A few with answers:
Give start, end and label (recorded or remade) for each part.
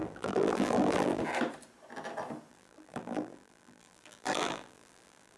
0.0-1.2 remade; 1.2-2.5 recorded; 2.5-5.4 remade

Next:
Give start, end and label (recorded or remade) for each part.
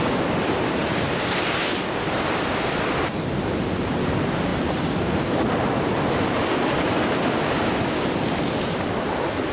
0.0-9.5 recorded